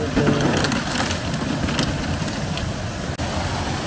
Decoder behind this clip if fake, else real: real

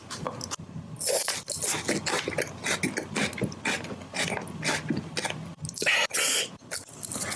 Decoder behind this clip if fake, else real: real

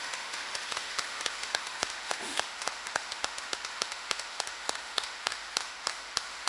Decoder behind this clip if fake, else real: fake, autoencoder, DAC-VAE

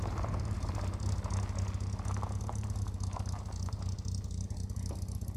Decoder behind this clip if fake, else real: real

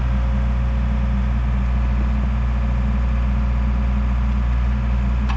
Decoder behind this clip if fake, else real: real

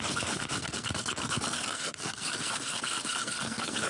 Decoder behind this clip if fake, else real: fake, codec, SNAC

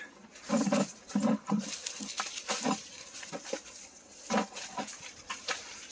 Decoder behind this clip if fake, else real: real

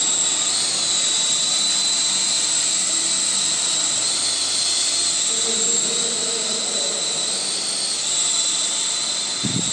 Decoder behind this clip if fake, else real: real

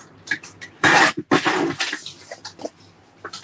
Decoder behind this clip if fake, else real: real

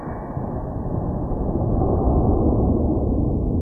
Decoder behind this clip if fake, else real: real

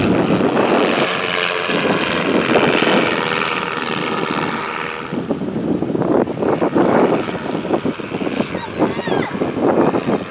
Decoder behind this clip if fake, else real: real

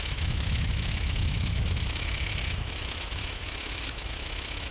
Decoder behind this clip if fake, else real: fake, autoencoder, DAC-VAE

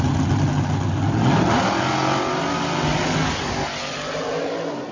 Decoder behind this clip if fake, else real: real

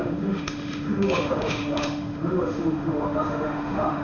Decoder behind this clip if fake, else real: fake, autoencoder, DAC-VAE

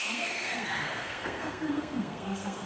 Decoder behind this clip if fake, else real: fake, codec, SNAC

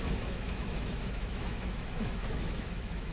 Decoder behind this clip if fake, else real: fake, autoencoder, DAC-VAE